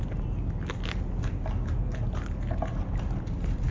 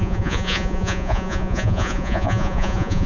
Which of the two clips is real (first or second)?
first